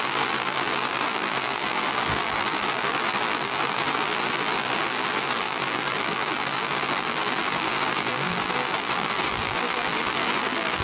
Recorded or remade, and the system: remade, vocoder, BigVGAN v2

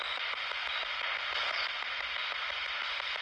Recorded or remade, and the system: remade, vocoder, BigVGAN v2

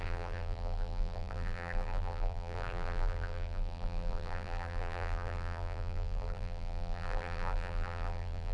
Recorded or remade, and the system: remade, vocoder, BigVGAN v2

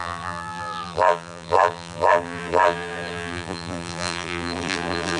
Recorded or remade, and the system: remade, vocoder, BigVGAN v2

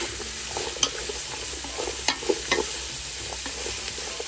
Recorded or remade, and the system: recorded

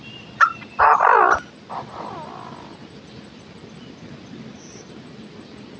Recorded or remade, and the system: remade, vocoder, BigVGAN v2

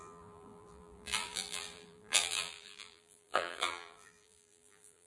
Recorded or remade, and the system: remade, vocoder, BigVGAN v2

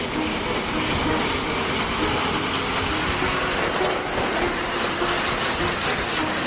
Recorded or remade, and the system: recorded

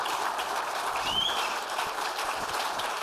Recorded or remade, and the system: remade, vocoder, BigVGAN v2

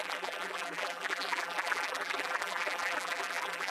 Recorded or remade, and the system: remade, vocoder, BigVGAN v2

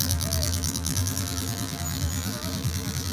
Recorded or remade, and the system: remade, vocoder, BigVGAN v2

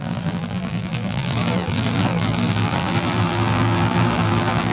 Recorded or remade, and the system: remade, vocoder, BigVGAN v2